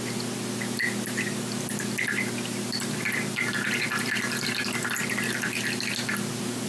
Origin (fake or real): real